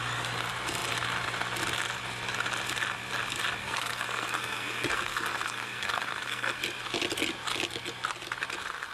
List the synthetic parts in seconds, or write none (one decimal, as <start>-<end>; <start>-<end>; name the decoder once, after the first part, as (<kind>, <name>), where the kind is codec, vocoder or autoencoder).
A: 3.6-6.6 (codec, SNAC)